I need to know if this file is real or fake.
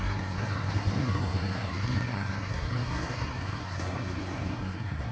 fake